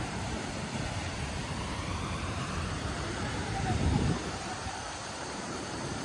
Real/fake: fake